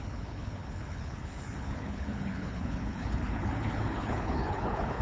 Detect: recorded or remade remade